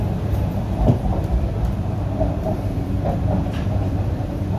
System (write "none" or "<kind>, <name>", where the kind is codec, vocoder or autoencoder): vocoder, BigVGAN v2